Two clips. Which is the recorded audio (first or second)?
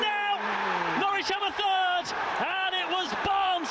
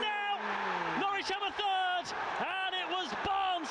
second